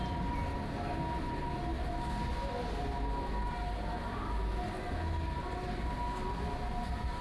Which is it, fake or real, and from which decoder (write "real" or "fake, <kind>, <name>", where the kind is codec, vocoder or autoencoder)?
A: real